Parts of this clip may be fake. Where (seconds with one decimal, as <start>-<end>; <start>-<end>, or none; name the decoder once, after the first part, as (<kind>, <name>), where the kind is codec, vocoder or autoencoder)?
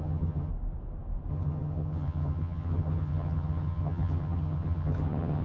0.0-0.5 (vocoder, HiFi-GAN); 1.3-5.4